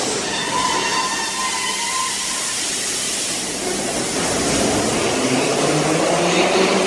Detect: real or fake real